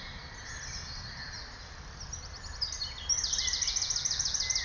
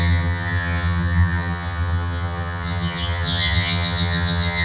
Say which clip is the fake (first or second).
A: second